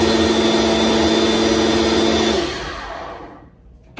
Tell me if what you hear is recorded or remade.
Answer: recorded